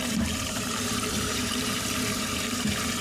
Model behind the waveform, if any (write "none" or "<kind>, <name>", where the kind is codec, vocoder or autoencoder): vocoder, BigVGAN v2